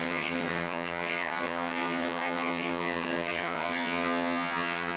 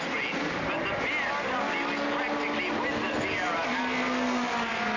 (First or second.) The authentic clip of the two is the second